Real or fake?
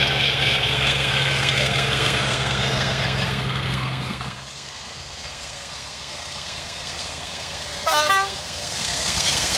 fake